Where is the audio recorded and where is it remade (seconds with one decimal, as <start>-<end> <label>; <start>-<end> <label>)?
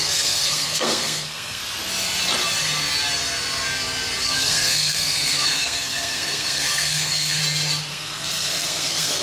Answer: 0.0-1.6 remade; 1.6-4.2 recorded; 4.2-7.4 remade; 7.4-7.9 recorded; 7.9-9.2 remade